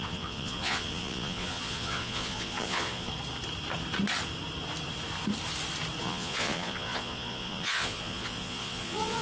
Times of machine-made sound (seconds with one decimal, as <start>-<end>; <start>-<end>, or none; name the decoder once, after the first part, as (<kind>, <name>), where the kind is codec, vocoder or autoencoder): 0.0-3.1 (vocoder, Vocos); 6.0-9.2